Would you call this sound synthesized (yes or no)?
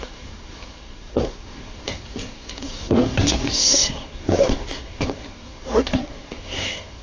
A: yes